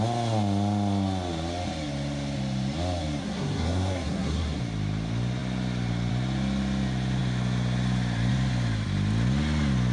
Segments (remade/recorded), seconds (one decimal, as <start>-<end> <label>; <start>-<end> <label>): 0.0-3.2 recorded; 3.2-4.6 remade; 4.6-9.9 recorded